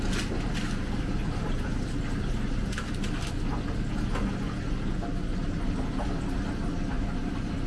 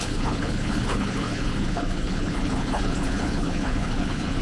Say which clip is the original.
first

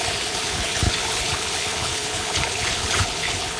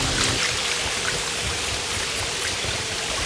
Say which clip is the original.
second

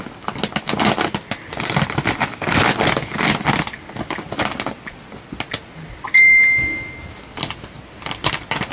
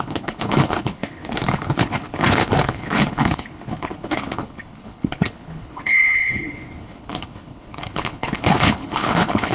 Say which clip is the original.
first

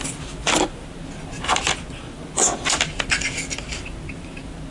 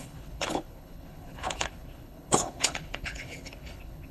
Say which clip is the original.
first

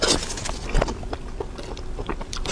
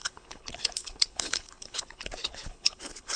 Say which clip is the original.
first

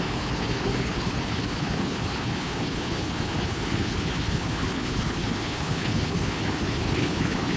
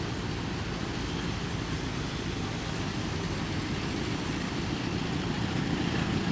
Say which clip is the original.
second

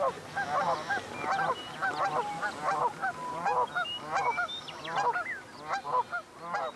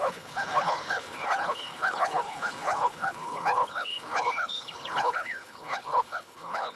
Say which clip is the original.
first